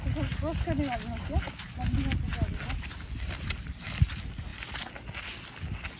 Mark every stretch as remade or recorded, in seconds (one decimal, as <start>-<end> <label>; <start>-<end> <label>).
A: 0.0-6.0 recorded